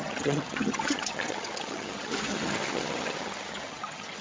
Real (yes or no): no